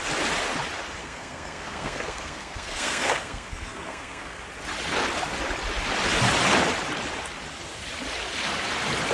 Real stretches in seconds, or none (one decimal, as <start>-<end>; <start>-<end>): 0.0-1.0; 4.4-9.1